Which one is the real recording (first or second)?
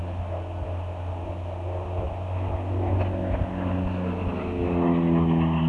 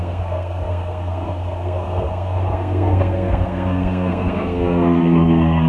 first